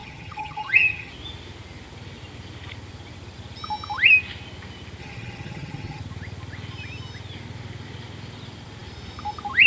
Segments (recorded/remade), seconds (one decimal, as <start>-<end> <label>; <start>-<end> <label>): 0.0-1.1 remade; 1.1-5.0 recorded; 5.0-6.0 remade; 6.0-9.7 recorded